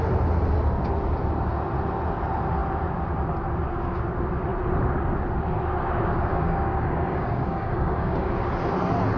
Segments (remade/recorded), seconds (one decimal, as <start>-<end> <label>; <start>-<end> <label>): 0.0-6.3 recorded; 6.3-8.3 remade; 8.3-9.2 recorded